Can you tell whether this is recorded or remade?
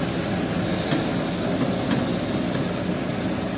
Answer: recorded